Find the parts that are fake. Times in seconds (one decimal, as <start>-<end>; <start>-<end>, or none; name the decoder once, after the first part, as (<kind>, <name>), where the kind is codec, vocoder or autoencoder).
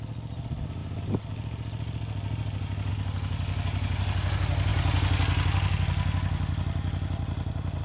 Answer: none